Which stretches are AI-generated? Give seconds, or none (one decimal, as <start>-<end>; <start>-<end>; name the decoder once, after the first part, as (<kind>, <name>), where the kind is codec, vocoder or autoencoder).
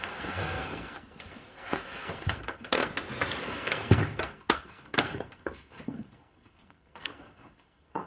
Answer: 0.0-2.9 (codec, SNAC); 3.4-8.1